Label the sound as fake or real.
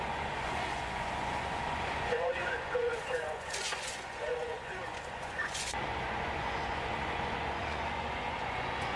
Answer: fake